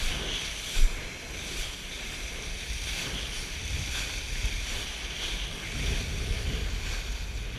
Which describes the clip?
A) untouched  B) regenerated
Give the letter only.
A